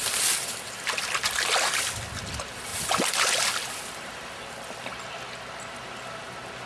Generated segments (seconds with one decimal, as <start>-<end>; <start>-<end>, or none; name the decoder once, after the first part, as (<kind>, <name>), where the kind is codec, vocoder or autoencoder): none